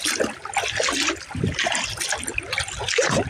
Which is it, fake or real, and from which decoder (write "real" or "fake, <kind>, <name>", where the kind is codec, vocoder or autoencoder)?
real